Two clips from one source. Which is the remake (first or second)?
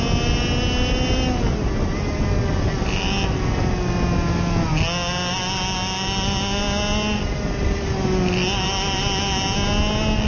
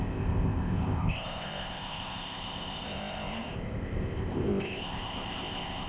second